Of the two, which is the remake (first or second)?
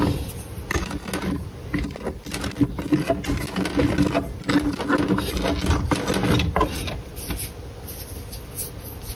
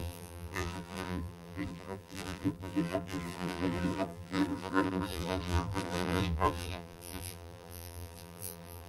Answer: second